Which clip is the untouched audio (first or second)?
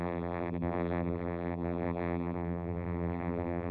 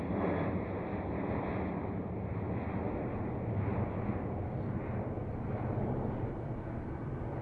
second